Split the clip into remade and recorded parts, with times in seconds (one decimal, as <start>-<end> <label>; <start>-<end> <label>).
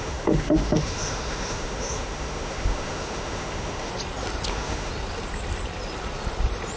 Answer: 0.0-3.9 remade; 3.9-4.5 recorded; 4.5-4.9 remade; 4.9-6.8 recorded